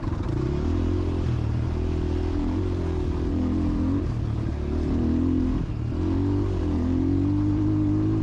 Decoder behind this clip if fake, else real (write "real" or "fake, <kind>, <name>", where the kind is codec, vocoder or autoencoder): real